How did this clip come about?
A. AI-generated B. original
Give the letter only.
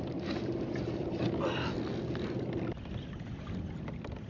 A